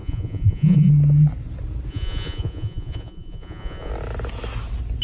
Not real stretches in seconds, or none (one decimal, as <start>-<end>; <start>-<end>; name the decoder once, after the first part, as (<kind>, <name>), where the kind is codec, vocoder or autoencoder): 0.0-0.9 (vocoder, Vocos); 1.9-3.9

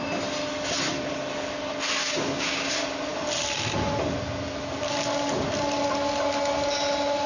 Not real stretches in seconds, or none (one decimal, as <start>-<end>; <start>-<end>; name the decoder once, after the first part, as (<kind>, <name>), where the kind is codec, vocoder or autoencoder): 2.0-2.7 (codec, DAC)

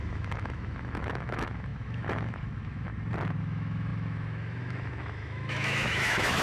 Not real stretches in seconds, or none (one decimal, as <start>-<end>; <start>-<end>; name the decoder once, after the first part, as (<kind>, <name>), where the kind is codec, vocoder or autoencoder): 0.0-2.9 (autoencoder, DAC-VAE); 3.4-6.4

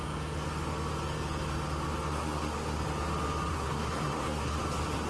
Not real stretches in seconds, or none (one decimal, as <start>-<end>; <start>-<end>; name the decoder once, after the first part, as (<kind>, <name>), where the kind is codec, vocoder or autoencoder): 2.1-2.8 (codec, SNAC); 3.5-4.6

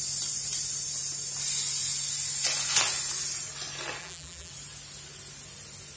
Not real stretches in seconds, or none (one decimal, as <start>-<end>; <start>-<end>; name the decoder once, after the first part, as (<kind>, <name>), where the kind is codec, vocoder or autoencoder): 4.0-4.5 (vocoder, BigVGAN v2)